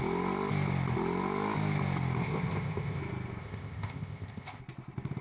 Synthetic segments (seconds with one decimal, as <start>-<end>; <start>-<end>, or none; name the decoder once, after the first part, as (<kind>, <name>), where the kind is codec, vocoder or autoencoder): 2.2-3.0 (codec, ZipCodec); 3.4-4.6